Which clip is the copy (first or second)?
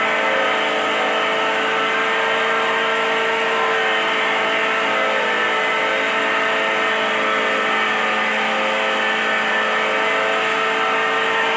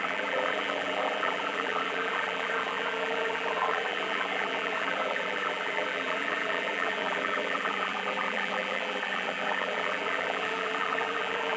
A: second